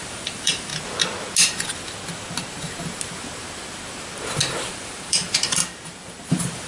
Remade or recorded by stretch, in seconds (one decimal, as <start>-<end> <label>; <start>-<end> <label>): 0.0-0.7 remade; 0.7-4.7 recorded; 4.7-5.6 remade; 5.6-6.3 recorded; 6.3-6.7 remade